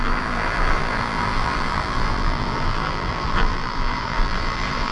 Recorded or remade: remade